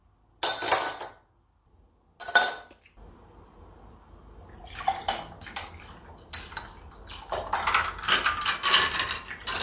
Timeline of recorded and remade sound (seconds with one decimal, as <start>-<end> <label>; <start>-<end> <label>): 0.0-9.6 recorded